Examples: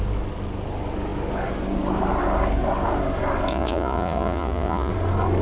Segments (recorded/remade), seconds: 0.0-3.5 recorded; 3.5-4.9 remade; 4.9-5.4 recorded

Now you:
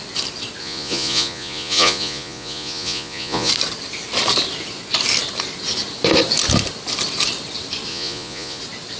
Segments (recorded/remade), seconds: 0.0-0.6 recorded; 0.6-3.5 remade; 3.5-7.9 recorded; 7.9-8.6 remade; 8.6-9.0 recorded

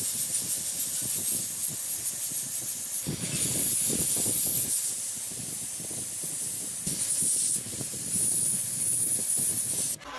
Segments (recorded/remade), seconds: 0.0-10.2 recorded

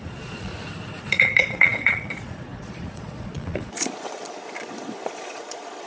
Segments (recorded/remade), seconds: 0.0-0.5 remade; 0.5-1.0 recorded; 1.0-5.9 remade